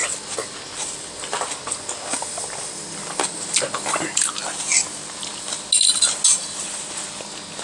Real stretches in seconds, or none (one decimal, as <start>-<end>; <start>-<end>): 0.0-7.6